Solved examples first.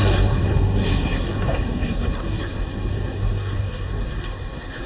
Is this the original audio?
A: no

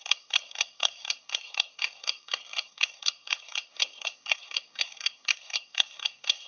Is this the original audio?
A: no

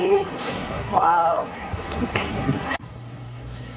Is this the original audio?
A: no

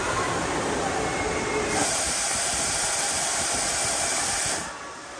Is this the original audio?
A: yes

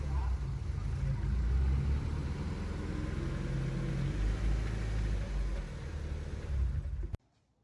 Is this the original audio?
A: yes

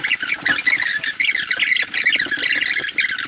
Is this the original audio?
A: yes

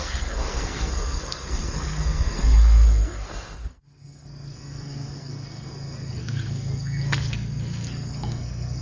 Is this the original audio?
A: no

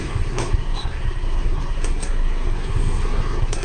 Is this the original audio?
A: no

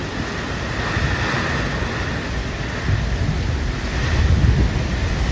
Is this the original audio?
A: yes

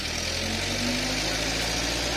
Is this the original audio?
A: yes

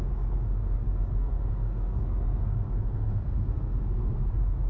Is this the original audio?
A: no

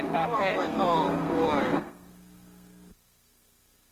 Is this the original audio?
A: no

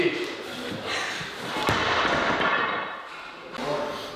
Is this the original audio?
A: yes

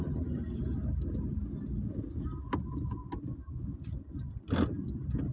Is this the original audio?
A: yes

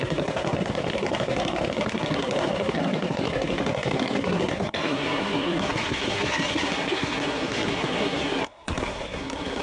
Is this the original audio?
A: no